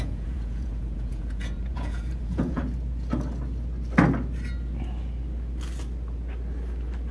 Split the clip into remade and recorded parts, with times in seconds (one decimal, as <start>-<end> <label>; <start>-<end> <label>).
0.0-2.6 remade; 2.6-7.1 recorded